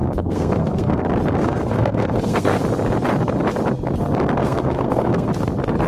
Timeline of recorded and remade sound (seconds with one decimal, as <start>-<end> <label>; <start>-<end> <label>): 0.0-1.0 remade; 1.0-1.4 recorded; 1.4-2.6 remade; 2.6-4.4 recorded; 4.4-5.3 remade; 5.3-5.9 recorded